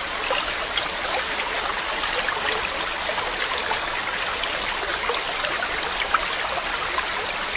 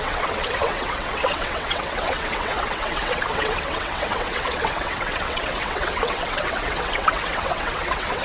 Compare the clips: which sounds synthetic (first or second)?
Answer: second